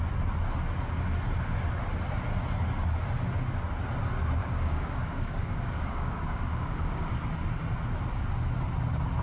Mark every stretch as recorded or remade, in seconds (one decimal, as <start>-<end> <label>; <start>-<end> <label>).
0.0-4.4 recorded; 4.4-7.1 remade; 7.1-9.2 recorded

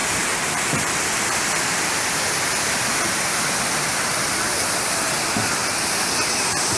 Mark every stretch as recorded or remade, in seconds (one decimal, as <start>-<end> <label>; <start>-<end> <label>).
0.0-4.1 remade; 4.1-5.6 recorded; 5.6-6.8 remade

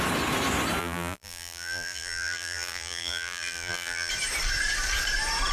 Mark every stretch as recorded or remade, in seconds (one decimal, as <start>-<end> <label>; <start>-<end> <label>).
0.0-0.8 recorded; 0.8-4.1 remade; 4.1-5.5 recorded

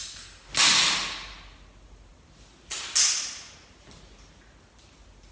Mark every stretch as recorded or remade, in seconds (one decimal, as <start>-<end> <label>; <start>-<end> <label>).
0.0-5.3 recorded

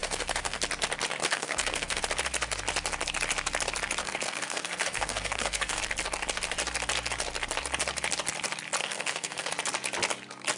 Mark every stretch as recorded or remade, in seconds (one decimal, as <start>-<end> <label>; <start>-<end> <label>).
0.0-0.6 remade; 0.6-1.2 recorded; 1.2-2.0 remade; 2.0-4.0 recorded; 4.0-5.8 remade; 5.8-8.8 recorded; 8.8-9.5 remade; 9.5-10.6 recorded

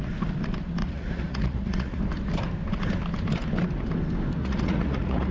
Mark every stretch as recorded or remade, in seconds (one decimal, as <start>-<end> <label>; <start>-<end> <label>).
0.0-0.8 recorded; 0.8-2.0 remade; 2.0-4.4 recorded; 4.4-5.3 remade